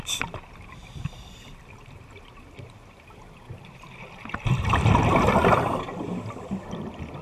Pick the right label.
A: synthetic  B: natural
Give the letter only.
B